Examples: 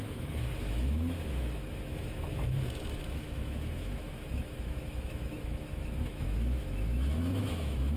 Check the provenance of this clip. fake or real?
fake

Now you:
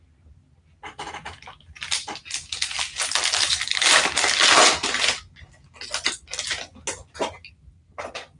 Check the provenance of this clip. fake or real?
real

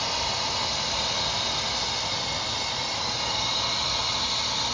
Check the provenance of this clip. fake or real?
real